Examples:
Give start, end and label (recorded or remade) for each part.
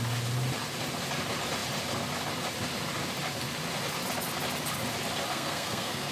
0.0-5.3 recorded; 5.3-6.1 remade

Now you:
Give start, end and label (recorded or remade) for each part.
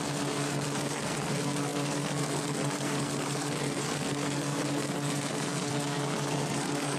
0.0-7.0 remade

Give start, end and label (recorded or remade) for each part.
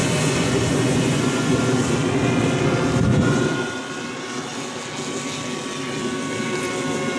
0.0-1.7 remade; 1.7-3.1 recorded; 3.1-3.8 remade; 3.8-7.2 recorded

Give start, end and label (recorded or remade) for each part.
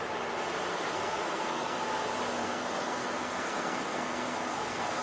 0.0-0.7 recorded; 0.7-1.8 remade; 1.8-2.4 recorded; 2.4-5.0 remade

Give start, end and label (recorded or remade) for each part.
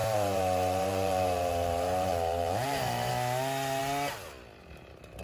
0.0-3.1 remade; 3.1-5.2 recorded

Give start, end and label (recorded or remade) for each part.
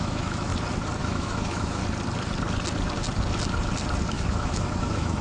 0.0-0.5 remade; 0.5-1.0 recorded; 1.0-1.8 remade; 1.8-4.1 recorded; 4.1-5.2 remade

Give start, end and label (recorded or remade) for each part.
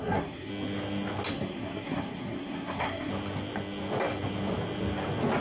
0.0-0.5 remade; 0.5-1.3 recorded; 1.3-3.1 remade; 3.1-5.4 recorded